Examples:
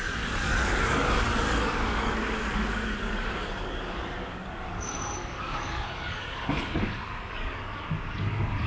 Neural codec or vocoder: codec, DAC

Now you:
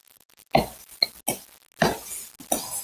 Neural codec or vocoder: none